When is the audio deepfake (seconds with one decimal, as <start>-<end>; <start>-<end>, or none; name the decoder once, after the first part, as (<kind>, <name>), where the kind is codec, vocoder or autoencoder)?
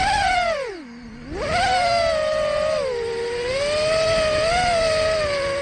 none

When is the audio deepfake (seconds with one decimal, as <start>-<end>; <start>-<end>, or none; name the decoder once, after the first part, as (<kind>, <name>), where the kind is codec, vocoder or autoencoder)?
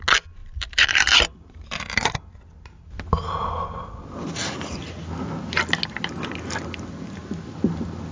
0.4-2.1 (vocoder, BigVGAN v2)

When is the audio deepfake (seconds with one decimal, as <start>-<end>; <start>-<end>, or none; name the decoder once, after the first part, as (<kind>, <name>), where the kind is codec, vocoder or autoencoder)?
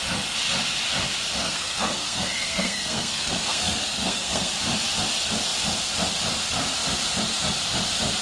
1.4-4.5 (codec, SNAC)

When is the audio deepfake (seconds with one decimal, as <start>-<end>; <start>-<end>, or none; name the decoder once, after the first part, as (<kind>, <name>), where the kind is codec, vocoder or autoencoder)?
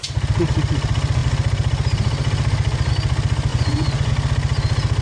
3.5-4.1 (vocoder, Vocos)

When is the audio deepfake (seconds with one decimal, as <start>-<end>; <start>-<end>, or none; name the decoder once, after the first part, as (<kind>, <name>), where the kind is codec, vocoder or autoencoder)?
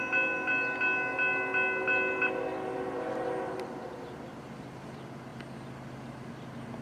none